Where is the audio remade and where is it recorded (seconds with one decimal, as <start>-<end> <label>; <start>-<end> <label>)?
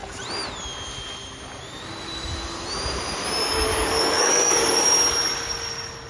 0.0-3.4 recorded; 3.4-4.8 remade; 4.8-6.1 recorded